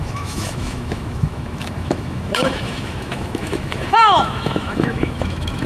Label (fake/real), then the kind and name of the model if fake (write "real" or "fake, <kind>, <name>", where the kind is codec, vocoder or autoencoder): fake, autoencoder, DAC-VAE